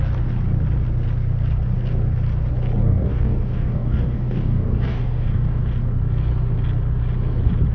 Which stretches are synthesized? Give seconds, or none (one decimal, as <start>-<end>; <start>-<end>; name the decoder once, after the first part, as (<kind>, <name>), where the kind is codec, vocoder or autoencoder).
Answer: 2.8-5.6 (codec, DAC)

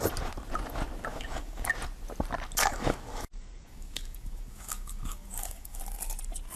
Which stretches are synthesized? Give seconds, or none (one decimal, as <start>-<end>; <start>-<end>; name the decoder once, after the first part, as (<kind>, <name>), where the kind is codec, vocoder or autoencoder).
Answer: 1.1-1.7 (codec, DAC); 2.6-5.8